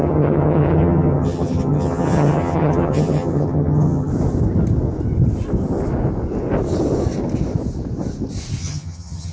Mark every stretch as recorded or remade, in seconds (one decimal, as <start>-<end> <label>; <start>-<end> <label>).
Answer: 0.0-4.1 remade; 4.1-8.6 recorded; 8.6-9.3 remade